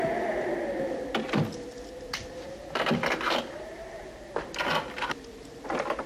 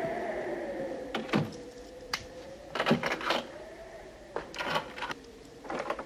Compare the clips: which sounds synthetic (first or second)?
second